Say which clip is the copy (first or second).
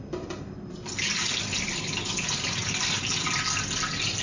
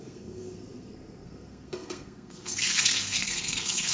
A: second